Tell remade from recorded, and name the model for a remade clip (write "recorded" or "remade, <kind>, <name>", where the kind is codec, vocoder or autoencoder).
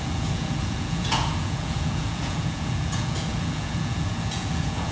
remade, vocoder, Vocos